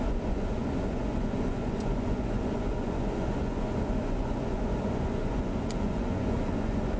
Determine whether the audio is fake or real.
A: fake